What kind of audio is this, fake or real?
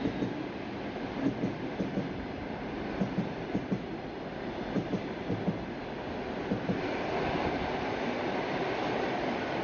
real